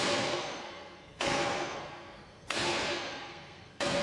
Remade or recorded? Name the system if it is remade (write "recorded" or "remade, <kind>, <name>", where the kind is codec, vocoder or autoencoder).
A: remade, codec, SNAC